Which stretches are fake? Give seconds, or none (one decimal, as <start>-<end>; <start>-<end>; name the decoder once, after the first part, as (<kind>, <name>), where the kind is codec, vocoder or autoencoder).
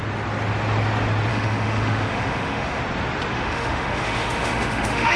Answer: 1.3-2.8 (autoencoder, DAC-VAE); 3.3-5.2